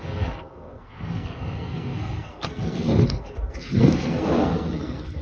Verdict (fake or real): fake